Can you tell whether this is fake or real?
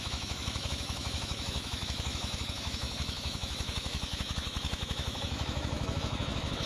fake